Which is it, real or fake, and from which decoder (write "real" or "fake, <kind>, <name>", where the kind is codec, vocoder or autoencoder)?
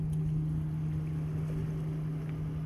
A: real